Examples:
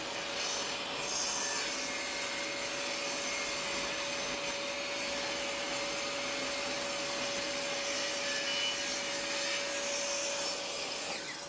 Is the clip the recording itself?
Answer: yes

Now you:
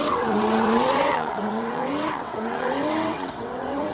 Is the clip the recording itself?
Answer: no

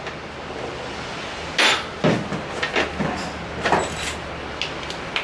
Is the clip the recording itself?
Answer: yes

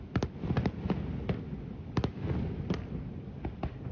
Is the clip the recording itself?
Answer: yes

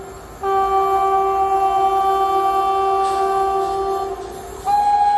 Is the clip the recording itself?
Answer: yes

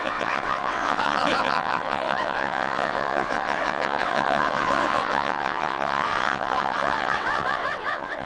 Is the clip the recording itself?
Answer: no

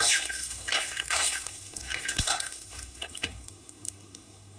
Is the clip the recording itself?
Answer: no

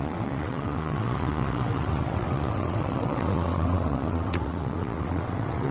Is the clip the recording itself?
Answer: no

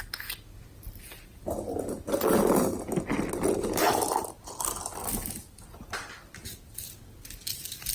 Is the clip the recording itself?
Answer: yes